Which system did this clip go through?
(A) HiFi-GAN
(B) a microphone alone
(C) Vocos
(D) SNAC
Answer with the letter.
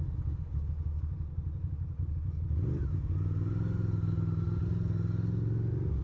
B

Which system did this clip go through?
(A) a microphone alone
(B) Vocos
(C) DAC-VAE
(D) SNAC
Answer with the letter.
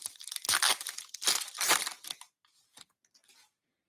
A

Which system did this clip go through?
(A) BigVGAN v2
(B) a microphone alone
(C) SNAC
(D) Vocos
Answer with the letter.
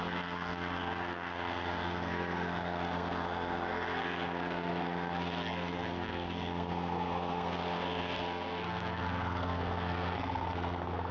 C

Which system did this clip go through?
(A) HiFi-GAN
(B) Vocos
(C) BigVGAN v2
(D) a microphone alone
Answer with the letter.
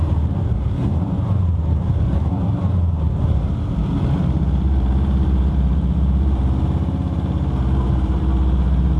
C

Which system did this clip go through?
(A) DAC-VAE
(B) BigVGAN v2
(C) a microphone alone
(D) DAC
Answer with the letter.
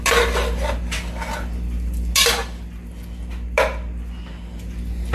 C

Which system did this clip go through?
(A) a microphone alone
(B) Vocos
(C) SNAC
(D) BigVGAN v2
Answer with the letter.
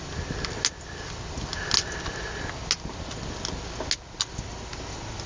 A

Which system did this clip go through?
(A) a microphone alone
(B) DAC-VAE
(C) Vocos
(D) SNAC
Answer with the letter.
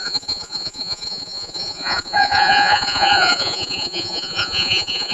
C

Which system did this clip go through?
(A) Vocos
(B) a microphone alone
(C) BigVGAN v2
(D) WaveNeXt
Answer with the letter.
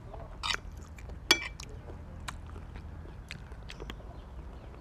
B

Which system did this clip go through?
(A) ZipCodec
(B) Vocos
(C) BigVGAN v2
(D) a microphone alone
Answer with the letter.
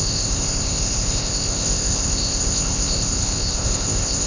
A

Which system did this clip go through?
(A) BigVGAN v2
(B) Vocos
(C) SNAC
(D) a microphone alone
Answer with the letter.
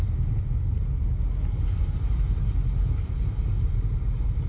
D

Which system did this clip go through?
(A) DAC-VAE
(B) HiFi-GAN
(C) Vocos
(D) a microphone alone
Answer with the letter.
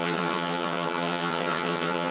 B